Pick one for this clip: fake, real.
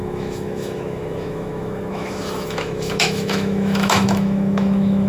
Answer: fake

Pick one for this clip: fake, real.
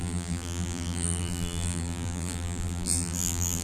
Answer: fake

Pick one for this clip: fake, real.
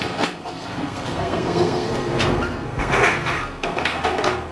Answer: fake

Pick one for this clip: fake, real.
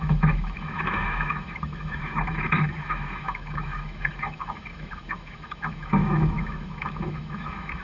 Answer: fake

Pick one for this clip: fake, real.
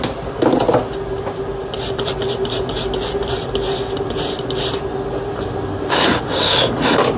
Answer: real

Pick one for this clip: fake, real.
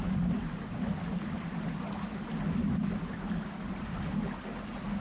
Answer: real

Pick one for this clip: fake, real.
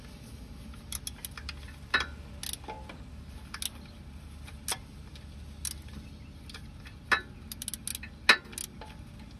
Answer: real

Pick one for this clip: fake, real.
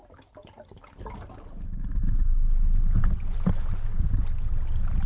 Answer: real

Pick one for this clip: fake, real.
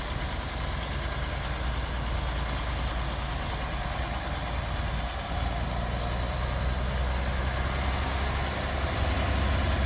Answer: real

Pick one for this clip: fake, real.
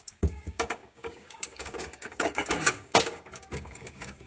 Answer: fake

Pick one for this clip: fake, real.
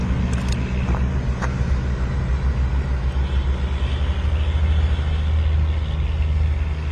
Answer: real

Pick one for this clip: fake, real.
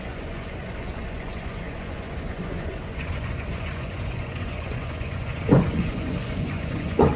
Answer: fake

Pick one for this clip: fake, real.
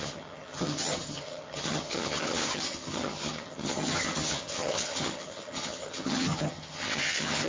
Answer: fake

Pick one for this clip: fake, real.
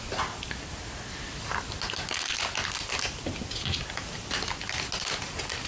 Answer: real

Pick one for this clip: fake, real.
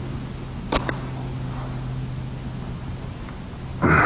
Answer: real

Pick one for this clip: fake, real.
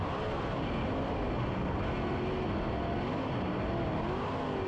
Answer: real